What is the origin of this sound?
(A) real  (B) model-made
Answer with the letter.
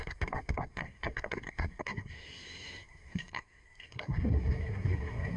B